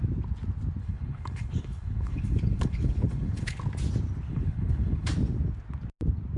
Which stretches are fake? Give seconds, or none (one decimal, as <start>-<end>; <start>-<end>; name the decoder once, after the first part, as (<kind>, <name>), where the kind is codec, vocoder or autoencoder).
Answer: 0.8-3.6 (codec, HILCodec); 4.3-5.1